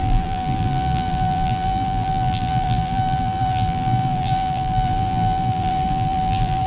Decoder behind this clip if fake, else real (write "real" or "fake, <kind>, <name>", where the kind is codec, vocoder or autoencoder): fake, vocoder, BigVGAN v2